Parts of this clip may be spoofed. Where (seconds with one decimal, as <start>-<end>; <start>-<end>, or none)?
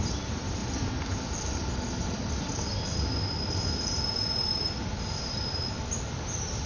0.0-0.6; 2.6-6.7